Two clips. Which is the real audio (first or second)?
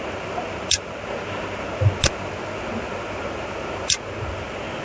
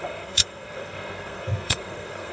first